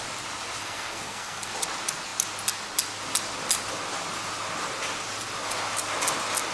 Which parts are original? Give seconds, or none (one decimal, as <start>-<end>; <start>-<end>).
0.0-0.6; 1.5-6.5